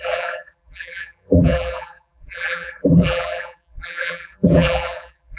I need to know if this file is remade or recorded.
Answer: remade